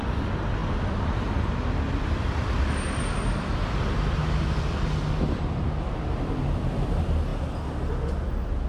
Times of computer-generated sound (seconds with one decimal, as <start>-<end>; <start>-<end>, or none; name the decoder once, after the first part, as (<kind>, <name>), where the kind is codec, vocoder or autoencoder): none